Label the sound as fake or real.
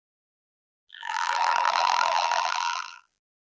fake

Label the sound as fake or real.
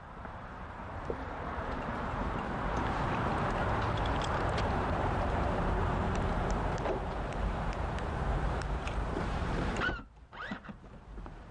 fake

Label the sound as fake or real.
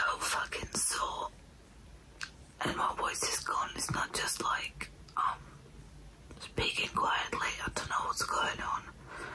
real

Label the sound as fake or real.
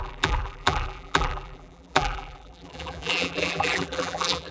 fake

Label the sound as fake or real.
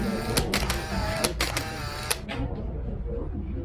real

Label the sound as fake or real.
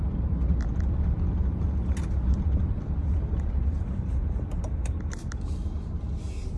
real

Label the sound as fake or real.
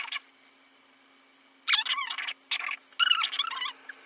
real